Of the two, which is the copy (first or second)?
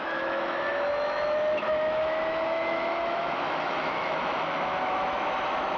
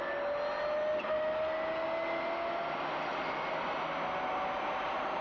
first